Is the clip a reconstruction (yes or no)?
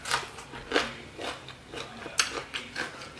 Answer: no